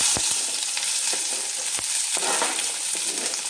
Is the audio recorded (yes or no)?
yes